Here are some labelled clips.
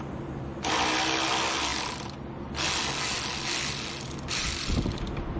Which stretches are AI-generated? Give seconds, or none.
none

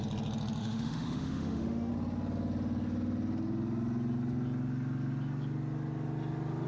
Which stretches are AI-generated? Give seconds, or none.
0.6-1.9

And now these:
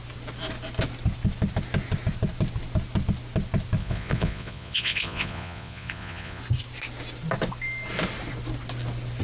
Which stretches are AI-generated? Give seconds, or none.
3.8-6.4

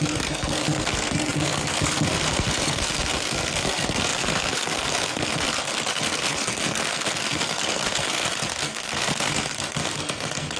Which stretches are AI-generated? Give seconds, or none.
0.0-10.6

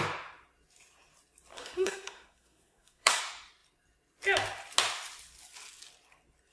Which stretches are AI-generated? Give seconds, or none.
1.5-3.2

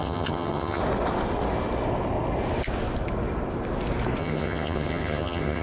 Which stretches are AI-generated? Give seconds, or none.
0.0-0.8; 4.2-5.6